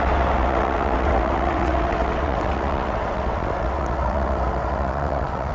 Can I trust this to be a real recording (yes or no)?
no